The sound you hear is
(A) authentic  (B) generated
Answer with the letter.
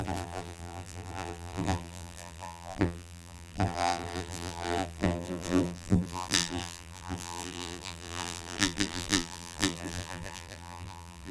B